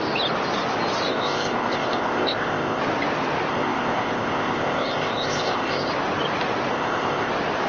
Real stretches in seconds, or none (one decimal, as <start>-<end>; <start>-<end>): 0.0-1.1; 2.8-3.5; 5.9-6.7; 7.3-7.7